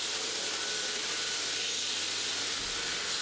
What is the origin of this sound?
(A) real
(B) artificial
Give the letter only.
A